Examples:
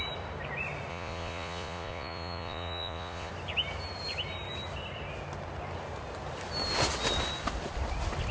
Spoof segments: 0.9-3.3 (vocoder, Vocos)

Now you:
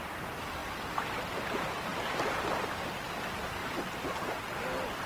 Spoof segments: 0.6-1.4 (vocoder, BigVGAN v2); 1.9-3.0; 3.6-4.1

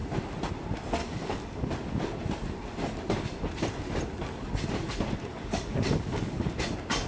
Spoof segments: 1.0-1.7 (codec, DAC); 5.3-6.5

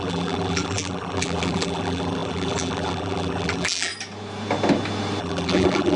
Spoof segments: 0.0-3.9 (vocoder, BigVGAN v2); 5.2-6.0

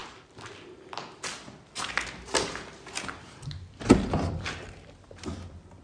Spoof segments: none

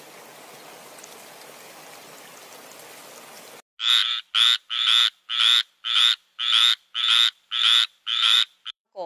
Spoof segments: 8.1-9.1 (vocoder, BigVGAN v2)

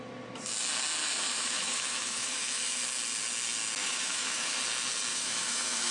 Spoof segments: 1.0-2.8 (autoencoder, DAC-VAE); 3.8-4.6; 5.1-5.9

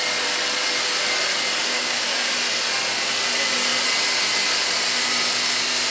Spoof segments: 1.6-2.3 (codec, DAC)